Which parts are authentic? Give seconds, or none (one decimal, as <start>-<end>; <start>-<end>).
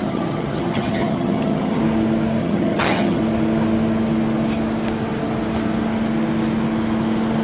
1.8-2.4; 3.2-7.4